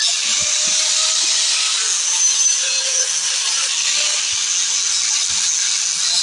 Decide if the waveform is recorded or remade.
recorded